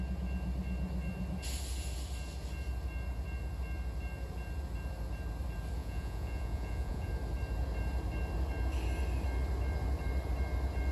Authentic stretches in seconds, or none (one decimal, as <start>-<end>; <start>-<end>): 0.0-5.8; 7.1-10.9

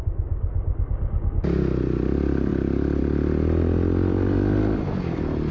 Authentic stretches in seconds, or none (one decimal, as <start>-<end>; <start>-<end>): 0.0-5.5

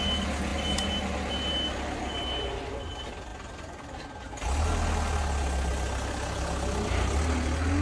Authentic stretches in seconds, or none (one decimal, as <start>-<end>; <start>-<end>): 0.0-7.8

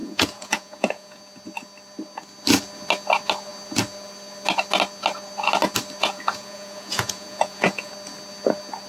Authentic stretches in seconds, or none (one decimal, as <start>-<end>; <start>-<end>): 1.2-6.0; 7.9-8.9

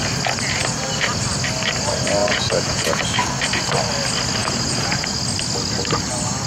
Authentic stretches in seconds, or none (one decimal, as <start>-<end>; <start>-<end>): 0.0-2.2; 3.0-4.4; 5.2-6.5

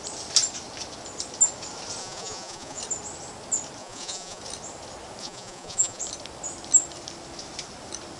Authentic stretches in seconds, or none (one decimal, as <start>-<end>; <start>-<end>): 0.0-2.0; 2.8-3.8; 4.4-5.2; 6.0-8.2

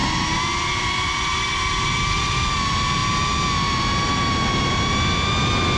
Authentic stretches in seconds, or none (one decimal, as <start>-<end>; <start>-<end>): 0.0-5.8